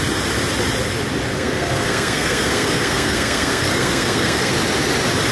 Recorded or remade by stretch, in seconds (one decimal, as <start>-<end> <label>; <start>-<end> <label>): 0.0-1.3 recorded; 1.3-4.5 remade; 4.5-5.3 recorded